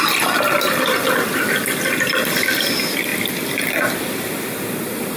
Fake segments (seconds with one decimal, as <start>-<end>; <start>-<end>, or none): none